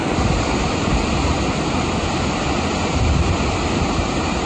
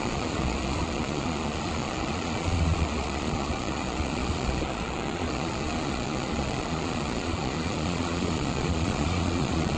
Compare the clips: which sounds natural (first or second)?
first